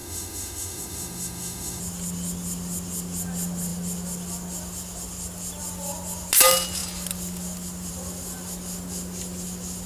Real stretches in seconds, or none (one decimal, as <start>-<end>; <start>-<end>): 1.8-9.9